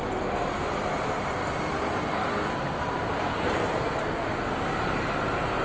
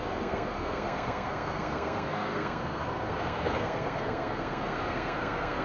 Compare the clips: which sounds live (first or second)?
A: first